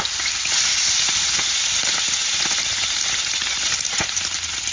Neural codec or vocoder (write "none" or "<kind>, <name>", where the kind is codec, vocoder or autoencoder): none